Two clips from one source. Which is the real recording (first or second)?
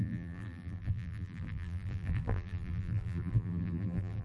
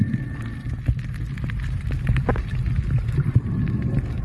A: second